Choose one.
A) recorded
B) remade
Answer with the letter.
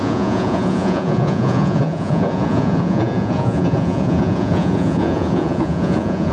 B